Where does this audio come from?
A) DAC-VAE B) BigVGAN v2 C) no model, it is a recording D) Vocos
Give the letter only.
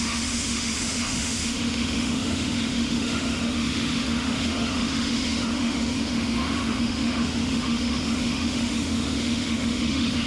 A